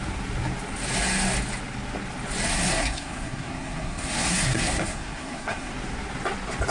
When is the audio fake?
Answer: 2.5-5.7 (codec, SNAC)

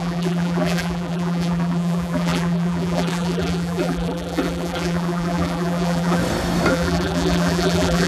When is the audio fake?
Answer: 0.0-6.2 (vocoder, BigVGAN v2); 6.7-8.1